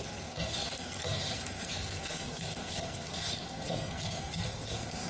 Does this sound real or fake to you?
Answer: fake